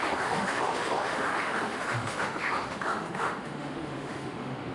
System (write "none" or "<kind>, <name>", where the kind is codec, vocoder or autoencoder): autoencoder, DAC-VAE